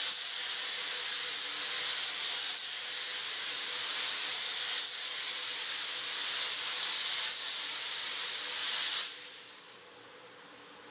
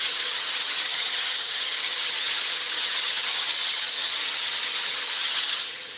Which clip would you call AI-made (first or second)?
second